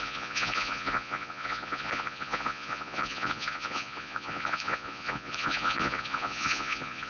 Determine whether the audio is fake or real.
fake